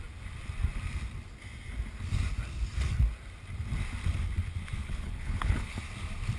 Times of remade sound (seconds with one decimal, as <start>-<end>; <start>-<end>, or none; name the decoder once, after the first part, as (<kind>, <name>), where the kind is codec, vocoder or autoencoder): 4.8-5.8 (codec, HILCodec)